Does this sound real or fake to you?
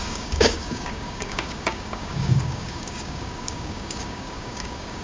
fake